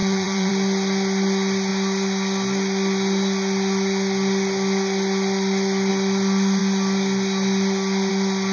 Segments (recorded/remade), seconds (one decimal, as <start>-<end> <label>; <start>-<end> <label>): 0.0-0.5 remade; 0.5-8.5 recorded